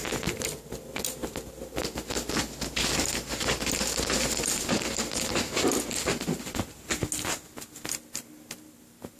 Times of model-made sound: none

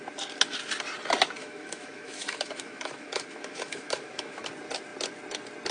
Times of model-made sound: 1.4-4.5

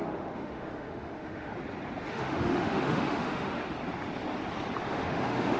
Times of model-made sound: 0.0-1.5; 2.1-3.6; 4.9-5.6

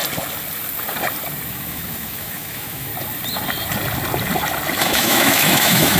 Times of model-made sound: 1.5-2.9; 4.8-6.0

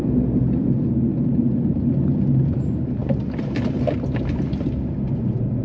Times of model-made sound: none